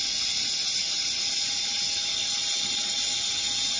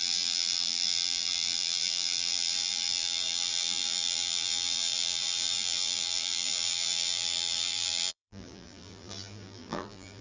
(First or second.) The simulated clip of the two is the second